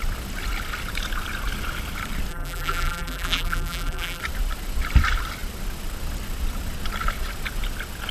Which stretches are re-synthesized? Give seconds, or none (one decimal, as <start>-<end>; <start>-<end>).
2.3-4.2